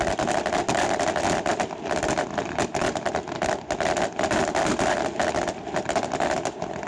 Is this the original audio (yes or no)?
yes